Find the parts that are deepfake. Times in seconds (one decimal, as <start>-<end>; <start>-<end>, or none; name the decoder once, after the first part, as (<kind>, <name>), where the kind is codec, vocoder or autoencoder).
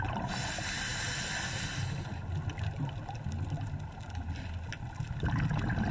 none